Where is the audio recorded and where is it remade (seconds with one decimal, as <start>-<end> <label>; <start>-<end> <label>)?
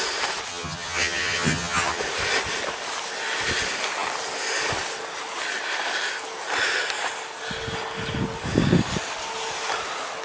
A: 0.0-0.5 recorded; 0.5-2.0 remade; 2.0-10.2 recorded